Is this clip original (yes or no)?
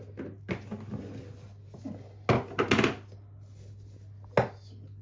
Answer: yes